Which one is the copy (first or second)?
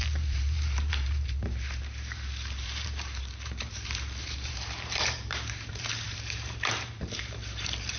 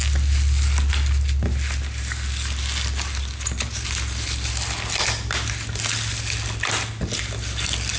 first